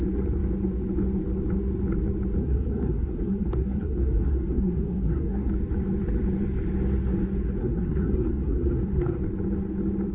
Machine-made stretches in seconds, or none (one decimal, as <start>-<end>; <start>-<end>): 2.4-5.5; 7.6-9.2